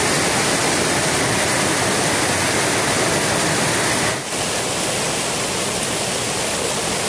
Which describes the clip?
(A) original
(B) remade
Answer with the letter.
A